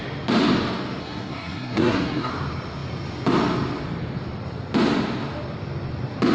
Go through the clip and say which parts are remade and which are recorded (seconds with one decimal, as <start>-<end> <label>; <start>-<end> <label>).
0.0-1.0 recorded; 1.0-2.3 remade; 2.3-6.3 recorded